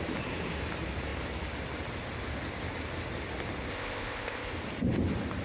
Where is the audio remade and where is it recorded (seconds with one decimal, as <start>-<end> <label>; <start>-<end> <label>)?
0.0-3.7 recorded; 3.7-4.5 remade; 4.5-5.4 recorded